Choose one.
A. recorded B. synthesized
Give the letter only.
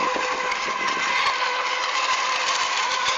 A